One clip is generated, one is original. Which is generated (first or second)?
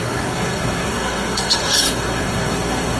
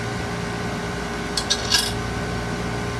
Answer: first